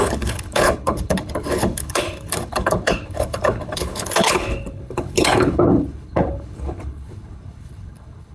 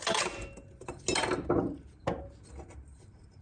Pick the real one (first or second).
second